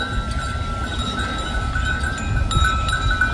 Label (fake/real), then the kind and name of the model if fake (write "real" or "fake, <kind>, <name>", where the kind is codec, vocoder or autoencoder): real